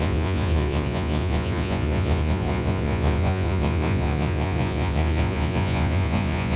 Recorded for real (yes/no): no